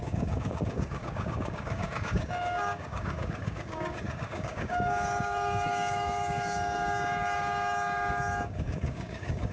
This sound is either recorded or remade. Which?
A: remade